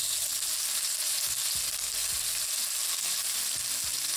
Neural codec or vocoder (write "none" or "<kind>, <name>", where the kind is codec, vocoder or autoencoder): none